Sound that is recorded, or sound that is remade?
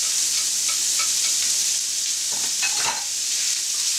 recorded